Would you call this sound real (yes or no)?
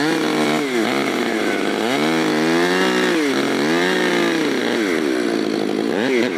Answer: yes